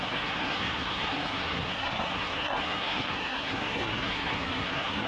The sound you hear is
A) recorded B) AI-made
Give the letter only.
B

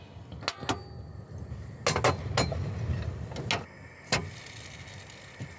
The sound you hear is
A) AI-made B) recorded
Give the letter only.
B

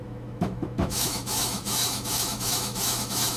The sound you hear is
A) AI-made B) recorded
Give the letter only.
A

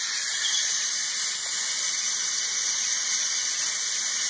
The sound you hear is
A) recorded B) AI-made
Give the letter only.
A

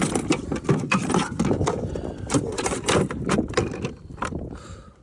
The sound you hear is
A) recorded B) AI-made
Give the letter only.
B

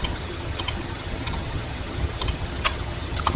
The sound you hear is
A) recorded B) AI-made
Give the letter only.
B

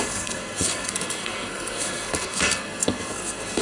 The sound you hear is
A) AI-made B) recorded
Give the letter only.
A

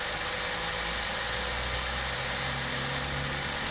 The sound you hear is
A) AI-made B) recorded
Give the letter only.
B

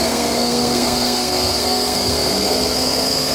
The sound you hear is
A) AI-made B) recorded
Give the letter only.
A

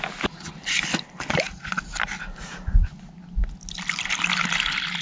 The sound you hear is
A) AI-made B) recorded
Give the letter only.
B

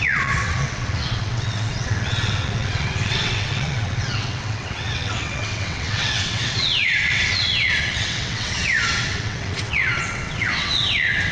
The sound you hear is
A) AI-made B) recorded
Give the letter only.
A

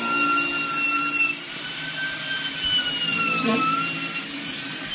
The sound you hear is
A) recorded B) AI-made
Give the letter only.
A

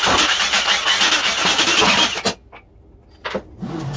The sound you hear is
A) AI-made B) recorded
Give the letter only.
B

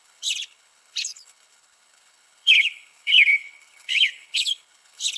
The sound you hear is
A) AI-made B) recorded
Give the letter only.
A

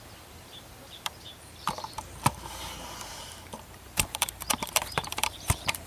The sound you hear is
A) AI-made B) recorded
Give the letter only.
A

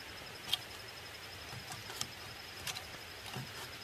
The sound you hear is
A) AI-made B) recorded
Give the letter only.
B